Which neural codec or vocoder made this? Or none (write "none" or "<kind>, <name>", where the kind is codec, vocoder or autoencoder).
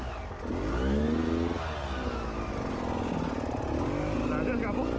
none